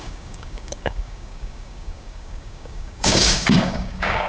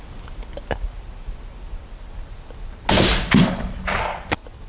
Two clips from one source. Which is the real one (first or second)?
second